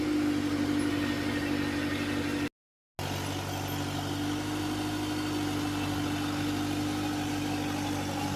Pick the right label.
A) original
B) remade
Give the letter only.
A